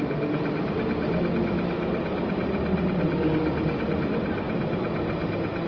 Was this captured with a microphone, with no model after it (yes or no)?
yes